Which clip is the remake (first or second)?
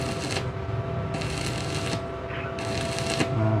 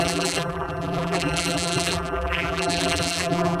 second